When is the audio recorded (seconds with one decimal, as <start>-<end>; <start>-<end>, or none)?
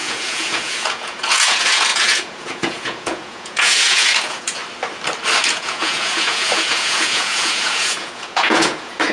4.6-5.4